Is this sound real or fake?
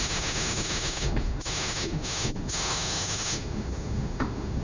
fake